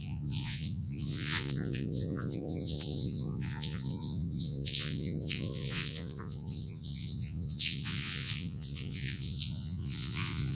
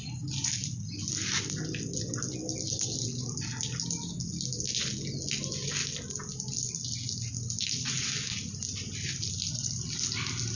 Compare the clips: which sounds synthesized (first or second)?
first